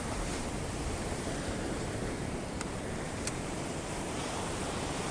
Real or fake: fake